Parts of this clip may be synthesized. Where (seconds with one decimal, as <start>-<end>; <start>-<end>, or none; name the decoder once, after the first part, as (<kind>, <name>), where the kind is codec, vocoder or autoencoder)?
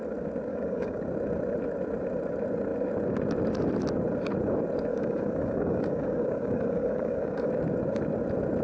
0.5-1.0 (codec, DAC); 4.9-7.5